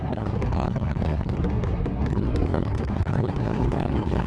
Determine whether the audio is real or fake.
fake